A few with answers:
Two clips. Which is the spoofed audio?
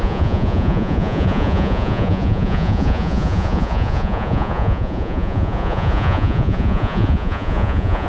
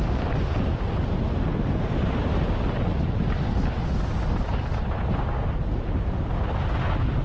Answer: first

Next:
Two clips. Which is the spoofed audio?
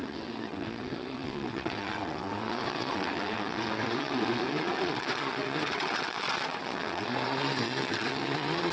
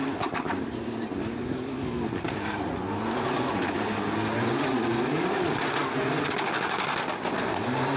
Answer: first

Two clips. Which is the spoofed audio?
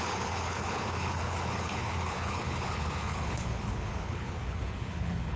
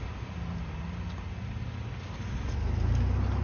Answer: first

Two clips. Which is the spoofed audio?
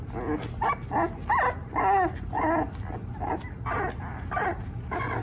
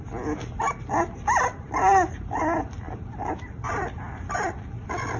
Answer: second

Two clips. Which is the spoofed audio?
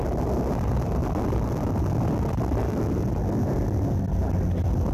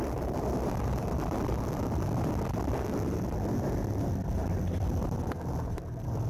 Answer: second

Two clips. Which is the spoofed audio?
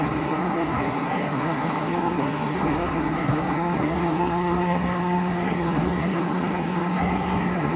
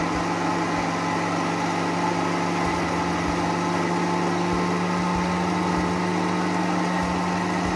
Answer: first